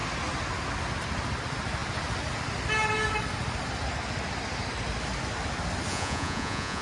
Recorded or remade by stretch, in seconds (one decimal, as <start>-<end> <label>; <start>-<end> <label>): 0.0-5.9 recorded; 5.9-6.8 remade